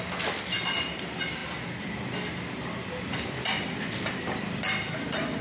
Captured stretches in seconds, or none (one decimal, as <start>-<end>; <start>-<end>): 1.4-3.2

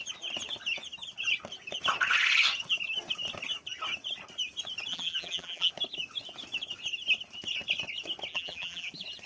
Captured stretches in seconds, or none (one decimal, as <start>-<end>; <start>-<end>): 0.0-4.9; 5.7-8.3; 8.9-9.3

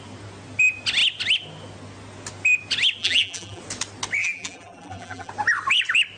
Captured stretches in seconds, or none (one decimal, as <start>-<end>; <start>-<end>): 0.0-3.0; 3.6-4.2; 5.3-6.2

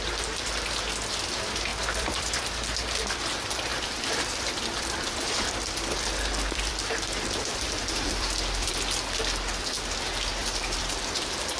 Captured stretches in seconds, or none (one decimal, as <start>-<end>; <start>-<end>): 0.0-1.7; 2.3-3.7; 8.7-10.4

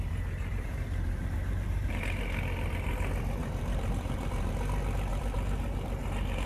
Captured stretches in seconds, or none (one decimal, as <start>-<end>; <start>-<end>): 0.0-0.5; 2.0-3.4; 4.5-5.1